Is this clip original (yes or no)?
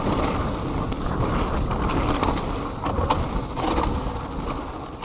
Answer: yes